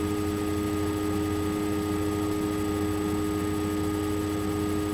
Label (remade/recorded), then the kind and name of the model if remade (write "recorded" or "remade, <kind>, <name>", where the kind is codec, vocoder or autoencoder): recorded